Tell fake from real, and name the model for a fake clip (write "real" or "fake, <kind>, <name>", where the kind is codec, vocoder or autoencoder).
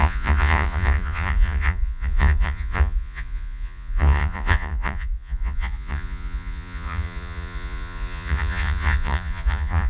fake, vocoder, Vocos